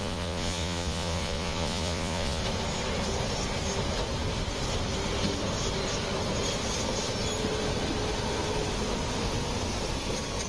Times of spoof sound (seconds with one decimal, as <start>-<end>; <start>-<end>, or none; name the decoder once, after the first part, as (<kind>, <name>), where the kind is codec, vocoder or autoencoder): 0.0-2.4 (vocoder, Vocos)